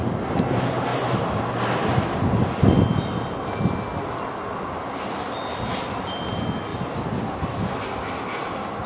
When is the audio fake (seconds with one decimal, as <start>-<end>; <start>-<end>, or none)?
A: none